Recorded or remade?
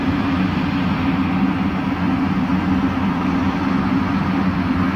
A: recorded